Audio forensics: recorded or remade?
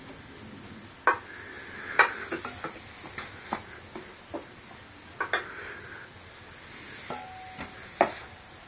recorded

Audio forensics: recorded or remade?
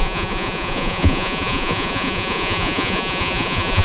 remade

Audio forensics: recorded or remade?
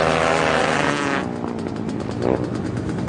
recorded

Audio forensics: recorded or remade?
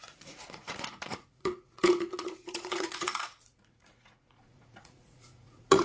remade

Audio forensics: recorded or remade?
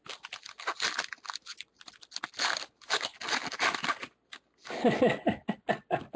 recorded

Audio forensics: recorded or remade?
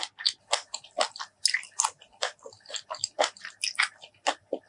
recorded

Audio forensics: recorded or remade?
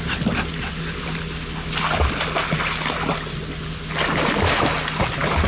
recorded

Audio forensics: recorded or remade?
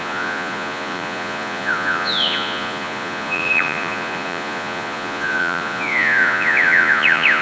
remade